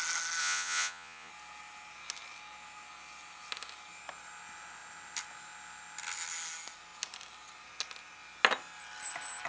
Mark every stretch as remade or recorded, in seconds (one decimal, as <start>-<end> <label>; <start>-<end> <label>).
0.0-0.4 recorded; 0.4-1.3 remade; 1.3-9.5 recorded